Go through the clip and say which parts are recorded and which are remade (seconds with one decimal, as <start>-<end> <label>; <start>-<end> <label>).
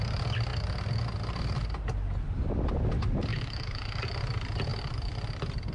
0.0-3.3 recorded; 3.3-4.0 remade; 4.0-5.7 recorded